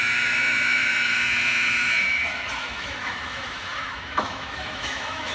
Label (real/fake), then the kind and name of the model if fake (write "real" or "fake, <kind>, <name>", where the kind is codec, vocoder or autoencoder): fake, autoencoder, DAC-VAE